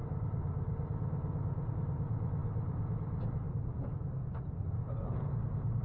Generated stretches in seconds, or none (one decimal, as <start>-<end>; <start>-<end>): none